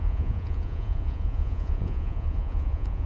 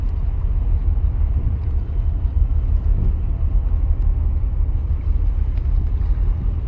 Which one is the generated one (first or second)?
first